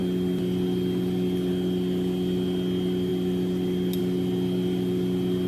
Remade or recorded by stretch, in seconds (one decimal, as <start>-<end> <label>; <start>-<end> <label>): 0.0-5.5 recorded